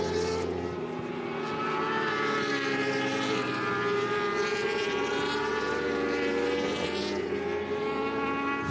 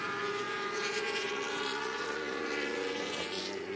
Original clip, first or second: first